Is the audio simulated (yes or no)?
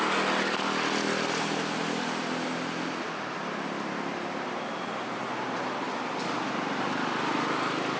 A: no